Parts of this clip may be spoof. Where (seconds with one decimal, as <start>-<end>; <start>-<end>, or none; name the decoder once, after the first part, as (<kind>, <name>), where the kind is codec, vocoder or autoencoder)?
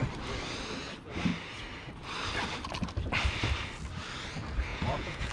4.7-5.3 (vocoder, Vocos)